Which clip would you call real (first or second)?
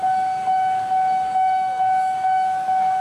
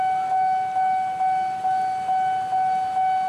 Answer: second